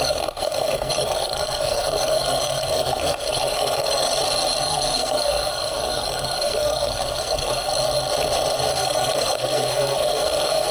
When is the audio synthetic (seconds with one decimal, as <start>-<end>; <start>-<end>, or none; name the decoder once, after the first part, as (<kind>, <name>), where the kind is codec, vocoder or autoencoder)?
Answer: 0.0-4.1 (codec, SNAC); 4.6-7.7; 8.7-10.7